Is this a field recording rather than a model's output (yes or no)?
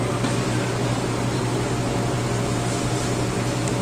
yes